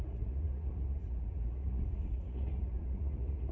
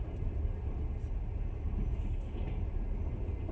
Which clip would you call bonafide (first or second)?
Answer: second